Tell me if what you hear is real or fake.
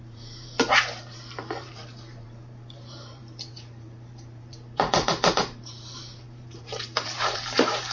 fake